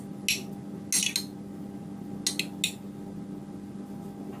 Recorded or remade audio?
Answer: recorded